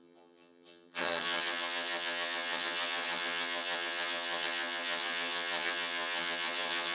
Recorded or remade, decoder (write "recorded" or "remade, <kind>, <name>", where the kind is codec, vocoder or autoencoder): remade, vocoder, HiFi-GAN